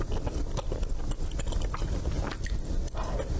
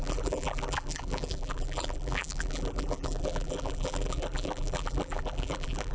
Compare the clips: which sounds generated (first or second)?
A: second